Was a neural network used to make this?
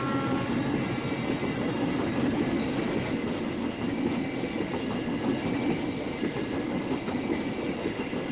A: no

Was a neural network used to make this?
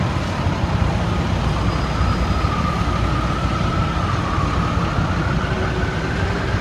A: no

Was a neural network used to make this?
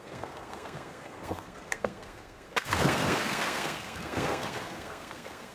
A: yes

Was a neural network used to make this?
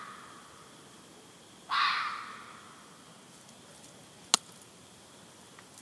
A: no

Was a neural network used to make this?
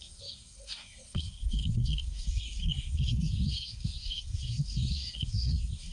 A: yes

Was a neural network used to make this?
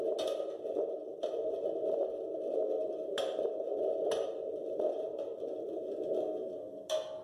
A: no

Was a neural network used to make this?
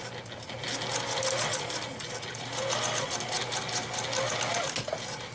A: no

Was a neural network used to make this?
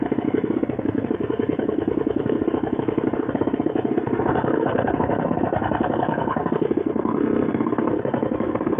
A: yes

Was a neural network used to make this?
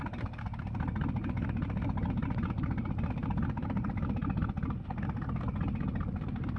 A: no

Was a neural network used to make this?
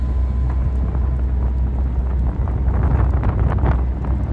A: no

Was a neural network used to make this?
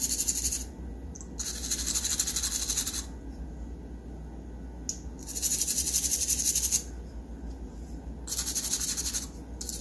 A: no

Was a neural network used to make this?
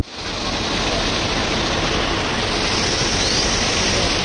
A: no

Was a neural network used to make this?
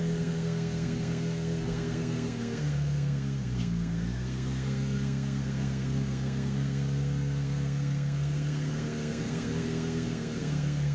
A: yes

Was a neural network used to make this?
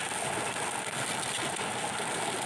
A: no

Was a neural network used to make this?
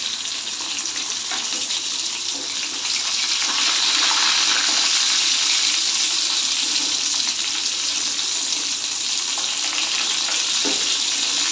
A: no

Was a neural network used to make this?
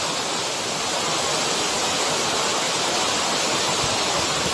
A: no